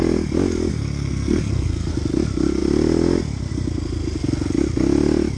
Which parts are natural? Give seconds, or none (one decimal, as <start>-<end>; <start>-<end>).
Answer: 0.0-0.7; 1.9-5.4